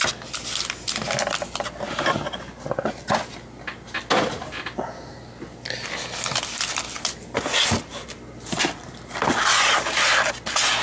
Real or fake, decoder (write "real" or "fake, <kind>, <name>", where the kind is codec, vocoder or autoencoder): real